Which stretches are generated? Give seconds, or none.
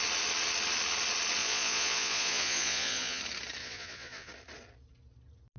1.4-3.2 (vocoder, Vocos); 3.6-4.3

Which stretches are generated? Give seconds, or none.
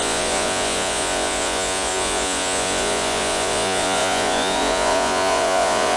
0.0-6.0 (vocoder, Vocos)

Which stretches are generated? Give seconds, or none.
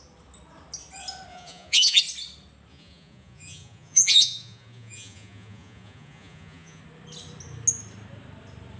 1.3-2.0 (vocoder, Vocos); 2.7-6.8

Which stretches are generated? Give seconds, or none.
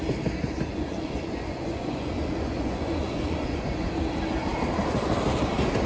0.7-3.9 (vocoder, Vocos)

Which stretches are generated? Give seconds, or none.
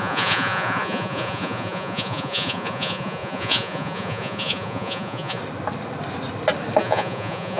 0.0-5.4 (vocoder, Vocos); 6.8-7.6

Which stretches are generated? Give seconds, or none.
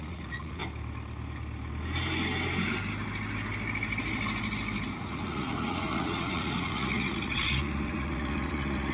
0.0-0.6 (vocoder, Vocos); 5.0-8.9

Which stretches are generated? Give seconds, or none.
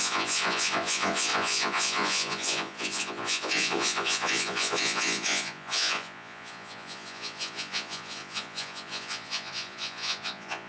0.0-10.7 (vocoder, Vocos)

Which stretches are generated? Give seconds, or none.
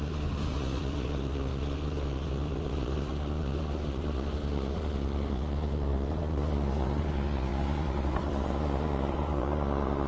0.0-10.1 (vocoder, Vocos)